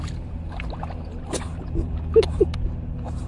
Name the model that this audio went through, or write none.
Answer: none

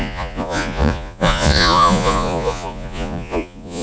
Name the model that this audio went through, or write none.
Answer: vocoder, Vocos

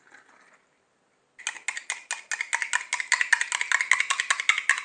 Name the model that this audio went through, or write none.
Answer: none